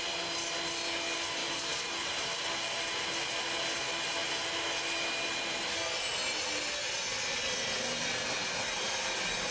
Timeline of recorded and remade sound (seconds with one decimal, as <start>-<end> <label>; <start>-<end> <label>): 0.0-9.5 recorded